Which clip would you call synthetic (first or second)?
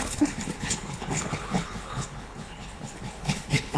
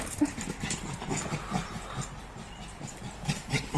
first